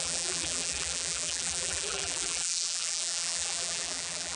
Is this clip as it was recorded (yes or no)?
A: no